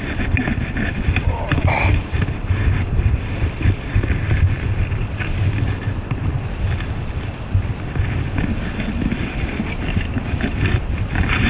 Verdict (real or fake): real